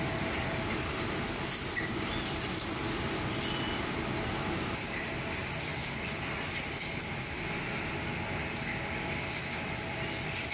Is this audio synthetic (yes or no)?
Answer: no